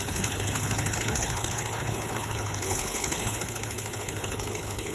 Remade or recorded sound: remade